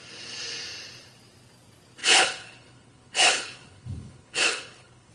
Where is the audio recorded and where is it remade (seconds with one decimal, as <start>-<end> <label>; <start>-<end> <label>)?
0.0-2.0 recorded; 2.0-5.1 remade